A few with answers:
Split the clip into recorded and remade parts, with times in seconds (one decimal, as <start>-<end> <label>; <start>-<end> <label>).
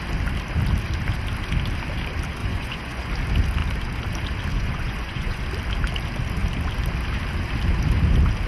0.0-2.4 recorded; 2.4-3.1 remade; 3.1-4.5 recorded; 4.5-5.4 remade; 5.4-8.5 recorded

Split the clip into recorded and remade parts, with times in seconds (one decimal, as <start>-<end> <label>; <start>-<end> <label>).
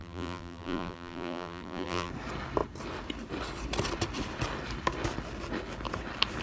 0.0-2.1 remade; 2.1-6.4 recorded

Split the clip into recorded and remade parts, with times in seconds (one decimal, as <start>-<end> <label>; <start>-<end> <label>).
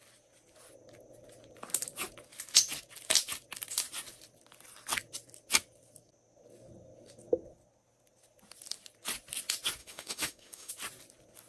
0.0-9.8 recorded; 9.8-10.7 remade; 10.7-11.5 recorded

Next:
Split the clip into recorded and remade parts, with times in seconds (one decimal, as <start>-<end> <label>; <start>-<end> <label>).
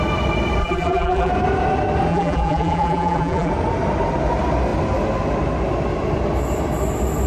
0.0-0.6 recorded; 0.6-1.3 remade; 1.3-2.1 recorded; 2.1-3.5 remade; 3.5-7.3 recorded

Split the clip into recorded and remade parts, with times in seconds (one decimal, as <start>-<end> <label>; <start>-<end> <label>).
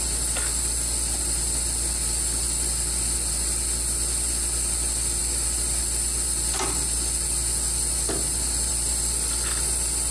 0.0-10.1 recorded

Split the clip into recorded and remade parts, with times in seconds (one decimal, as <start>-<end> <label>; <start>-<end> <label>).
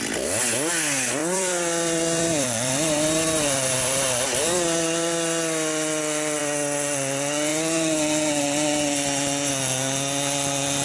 0.0-1.2 recorded; 1.2-6.4 remade; 6.4-7.5 recorded; 7.5-9.5 remade; 9.5-10.8 recorded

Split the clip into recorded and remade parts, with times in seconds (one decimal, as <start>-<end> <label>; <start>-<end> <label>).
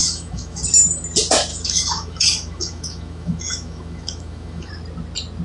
0.0-0.6 remade; 0.6-1.5 recorded; 1.5-4.7 remade; 4.7-5.4 recorded